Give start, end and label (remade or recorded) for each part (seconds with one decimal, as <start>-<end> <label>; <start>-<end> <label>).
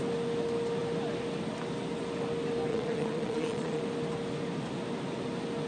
0.0-2.7 recorded; 2.7-3.8 remade; 3.8-5.7 recorded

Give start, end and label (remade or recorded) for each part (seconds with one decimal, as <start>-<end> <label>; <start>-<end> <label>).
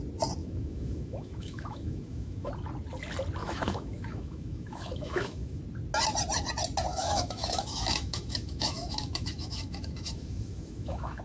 0.0-0.4 recorded; 0.4-2.5 remade; 2.5-3.4 recorded; 3.4-5.6 remade; 5.6-6.9 recorded; 6.9-11.2 remade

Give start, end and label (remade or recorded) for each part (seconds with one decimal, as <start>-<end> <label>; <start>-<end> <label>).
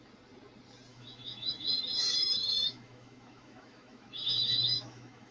0.0-0.9 recorded; 0.9-1.7 remade; 1.7-2.2 recorded; 2.2-5.3 remade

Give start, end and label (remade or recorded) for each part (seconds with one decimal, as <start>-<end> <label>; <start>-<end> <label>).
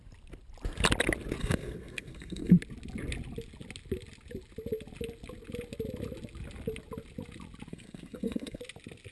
0.0-1.4 recorded; 1.4-2.5 remade; 2.5-7.7 recorded; 7.7-8.6 remade; 8.6-9.1 recorded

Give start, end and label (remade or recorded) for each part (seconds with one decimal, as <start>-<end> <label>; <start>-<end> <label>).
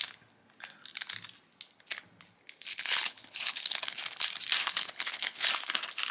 0.0-2.7 recorded; 2.7-4.0 remade; 4.0-4.6 recorded; 4.6-5.5 remade; 5.5-6.1 recorded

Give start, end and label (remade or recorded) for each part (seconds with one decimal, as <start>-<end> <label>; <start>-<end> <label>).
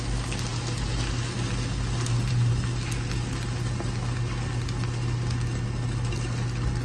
0.0-6.8 recorded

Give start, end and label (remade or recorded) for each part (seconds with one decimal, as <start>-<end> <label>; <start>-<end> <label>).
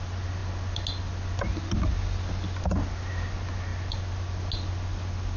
0.0-5.4 recorded